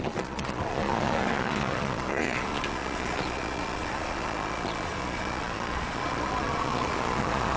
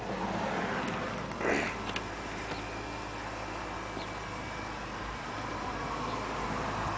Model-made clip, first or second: first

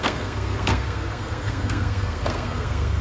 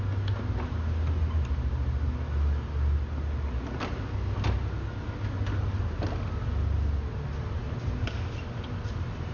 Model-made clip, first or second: first